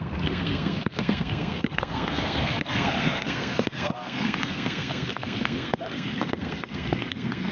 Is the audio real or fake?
fake